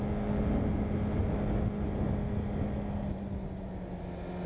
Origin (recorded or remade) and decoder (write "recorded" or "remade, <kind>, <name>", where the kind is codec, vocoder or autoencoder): recorded